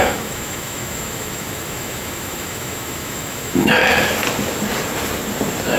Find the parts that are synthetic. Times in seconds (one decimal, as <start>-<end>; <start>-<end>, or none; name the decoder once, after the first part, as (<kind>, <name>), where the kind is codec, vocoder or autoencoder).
0.0-3.8 (autoencoder, DAC-VAE)